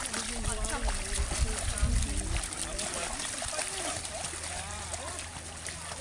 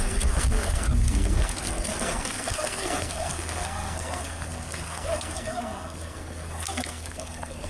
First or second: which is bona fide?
first